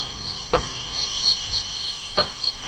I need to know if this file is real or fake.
fake